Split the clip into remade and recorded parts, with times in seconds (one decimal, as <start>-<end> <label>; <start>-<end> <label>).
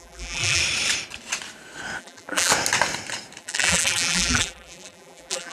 0.0-0.6 remade; 0.6-2.0 recorded; 2.0-2.5 remade; 2.5-3.4 recorded; 3.4-5.5 remade